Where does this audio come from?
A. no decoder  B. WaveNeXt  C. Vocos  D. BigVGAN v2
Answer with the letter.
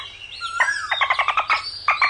A